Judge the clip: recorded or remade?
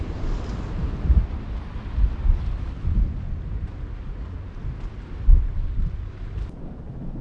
recorded